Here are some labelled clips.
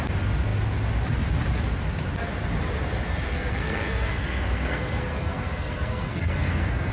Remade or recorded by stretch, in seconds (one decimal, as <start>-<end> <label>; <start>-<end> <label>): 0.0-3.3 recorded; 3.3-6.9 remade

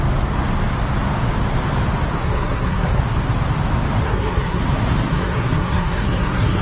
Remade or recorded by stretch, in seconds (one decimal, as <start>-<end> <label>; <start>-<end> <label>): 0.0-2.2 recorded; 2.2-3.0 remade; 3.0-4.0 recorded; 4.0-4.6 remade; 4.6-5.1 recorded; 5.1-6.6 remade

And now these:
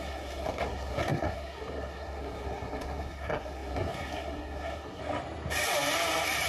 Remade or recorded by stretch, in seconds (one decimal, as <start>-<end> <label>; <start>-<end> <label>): 0.0-5.0 remade; 5.0-6.5 recorded